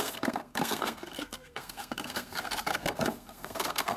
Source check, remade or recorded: remade